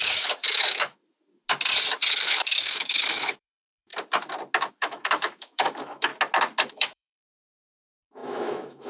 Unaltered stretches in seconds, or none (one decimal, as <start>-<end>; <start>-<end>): 1.0-2.1; 3.9-4.7; 6.1-6.7